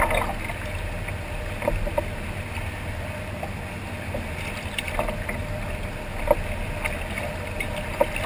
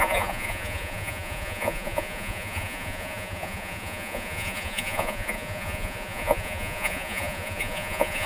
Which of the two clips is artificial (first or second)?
second